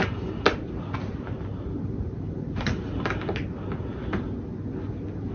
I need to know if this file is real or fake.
real